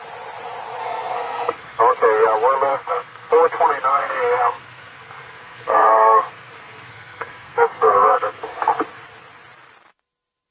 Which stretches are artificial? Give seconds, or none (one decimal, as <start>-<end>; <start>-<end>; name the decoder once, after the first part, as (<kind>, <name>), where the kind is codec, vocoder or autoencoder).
0.8-1.8 (codec, SNAC); 2.7-3.3; 3.9-8.7